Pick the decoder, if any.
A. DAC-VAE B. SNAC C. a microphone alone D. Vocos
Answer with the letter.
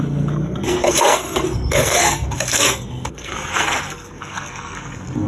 B